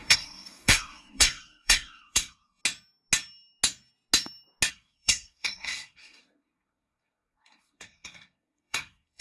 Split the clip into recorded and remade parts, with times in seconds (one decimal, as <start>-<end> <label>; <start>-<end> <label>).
0.0-2.6 remade; 2.6-4.7 recorded; 4.7-9.2 remade